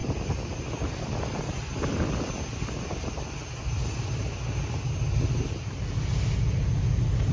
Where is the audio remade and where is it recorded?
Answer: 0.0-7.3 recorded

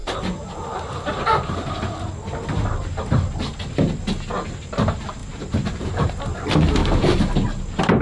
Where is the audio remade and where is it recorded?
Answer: 0.0-0.7 remade; 0.7-5.2 recorded; 5.2-6.1 remade; 6.1-6.8 recorded; 6.8-7.3 remade; 7.3-8.0 recorded

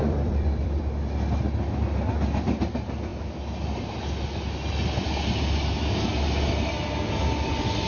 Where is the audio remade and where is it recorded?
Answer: 0.0-0.8 remade; 0.8-7.9 recorded

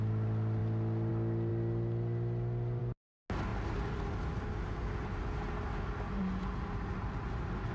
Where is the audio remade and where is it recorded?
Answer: 0.0-7.7 recorded

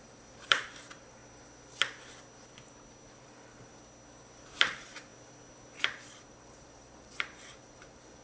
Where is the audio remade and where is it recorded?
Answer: 0.0-1.2 remade; 1.2-3.1 recorded; 3.1-3.7 remade; 3.7-4.5 recorded; 4.5-5.1 remade; 5.1-5.8 recorded; 5.8-8.2 remade

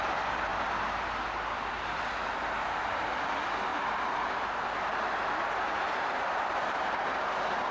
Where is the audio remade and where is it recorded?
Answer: 0.0-0.5 remade; 0.5-1.6 recorded; 1.6-3.7 remade; 3.7-7.7 recorded

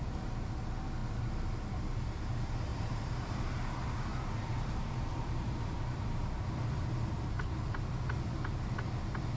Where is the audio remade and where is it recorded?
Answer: 0.0-2.7 recorded; 2.7-3.6 remade; 3.6-4.1 recorded; 4.1-6.6 remade; 6.6-9.4 recorded

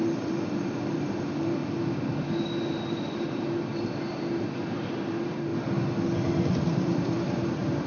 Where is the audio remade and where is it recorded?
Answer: 0.0-1.6 remade; 1.6-2.5 recorded; 2.5-5.5 remade; 5.5-6.6 recorded; 6.6-7.9 remade